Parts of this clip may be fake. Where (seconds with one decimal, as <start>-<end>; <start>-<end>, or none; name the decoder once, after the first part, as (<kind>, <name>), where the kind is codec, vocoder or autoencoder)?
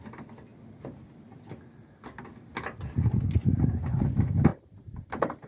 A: 0.5-1.6 (vocoder, BigVGAN v2); 4.5-5.1